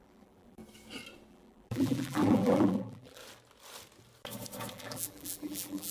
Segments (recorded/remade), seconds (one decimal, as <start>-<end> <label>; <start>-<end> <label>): 0.0-0.6 remade; 0.6-1.3 recorded; 1.3-3.2 remade; 3.2-4.7 recorded; 4.7-5.9 remade